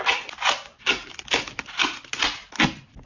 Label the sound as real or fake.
real